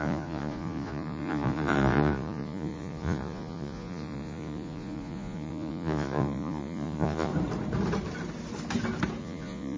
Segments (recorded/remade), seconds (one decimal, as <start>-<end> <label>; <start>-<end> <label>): 0.0-7.3 remade; 7.3-9.2 recorded; 9.2-9.8 remade